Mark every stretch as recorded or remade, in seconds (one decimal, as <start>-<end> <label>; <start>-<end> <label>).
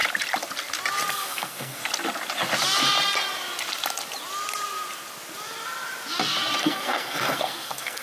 0.0-1.1 recorded; 1.1-1.8 remade; 1.8-6.6 recorded; 6.6-8.0 remade